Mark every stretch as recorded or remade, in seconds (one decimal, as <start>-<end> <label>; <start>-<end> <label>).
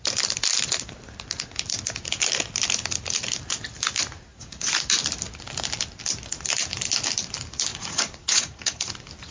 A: 0.0-4.3 recorded; 4.3-4.8 remade; 4.8-7.7 recorded; 7.7-8.9 remade; 8.9-9.3 recorded